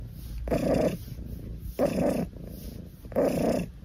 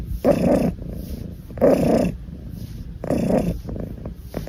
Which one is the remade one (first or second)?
second